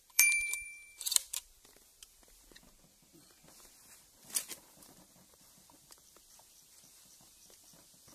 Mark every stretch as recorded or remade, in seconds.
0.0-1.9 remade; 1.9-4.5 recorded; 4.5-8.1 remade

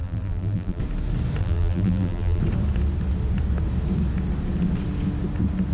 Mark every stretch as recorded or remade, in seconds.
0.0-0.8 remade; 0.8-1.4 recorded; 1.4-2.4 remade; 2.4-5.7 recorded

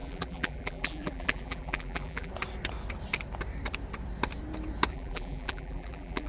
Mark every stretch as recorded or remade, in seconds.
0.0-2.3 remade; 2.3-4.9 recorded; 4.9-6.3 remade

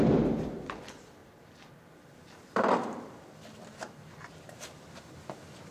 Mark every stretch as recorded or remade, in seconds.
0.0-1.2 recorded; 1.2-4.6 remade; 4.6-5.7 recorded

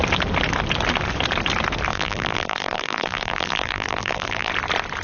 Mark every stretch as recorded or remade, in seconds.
0.0-1.9 recorded; 1.9-4.5 remade; 4.5-5.0 recorded

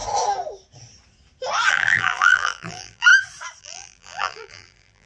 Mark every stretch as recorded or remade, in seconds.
0.0-1.7 recorded; 1.7-3.1 remade; 3.1-3.6 recorded; 3.6-5.1 remade